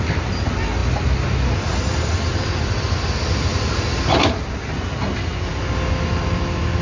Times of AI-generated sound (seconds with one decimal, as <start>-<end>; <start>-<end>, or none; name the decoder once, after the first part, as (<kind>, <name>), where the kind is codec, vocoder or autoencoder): none